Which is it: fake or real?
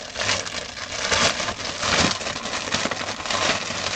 real